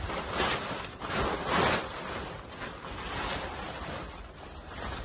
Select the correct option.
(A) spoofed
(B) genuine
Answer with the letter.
B